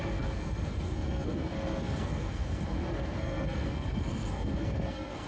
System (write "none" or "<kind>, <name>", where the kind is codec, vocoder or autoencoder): codec, SNAC